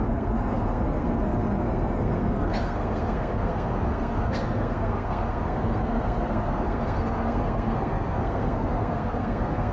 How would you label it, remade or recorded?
remade